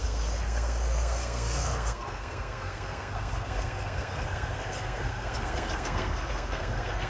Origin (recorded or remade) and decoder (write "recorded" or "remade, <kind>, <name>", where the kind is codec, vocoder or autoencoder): remade, codec, SNAC